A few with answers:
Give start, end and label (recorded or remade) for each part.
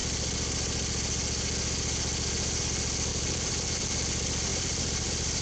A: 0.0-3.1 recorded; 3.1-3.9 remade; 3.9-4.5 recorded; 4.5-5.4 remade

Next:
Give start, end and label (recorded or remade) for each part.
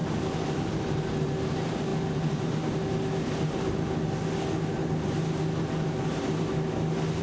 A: 0.0-7.2 recorded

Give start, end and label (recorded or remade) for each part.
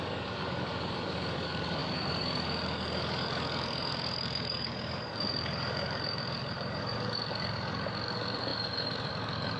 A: 0.0-9.6 remade